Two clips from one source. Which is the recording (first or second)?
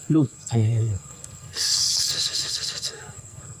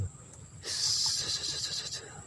second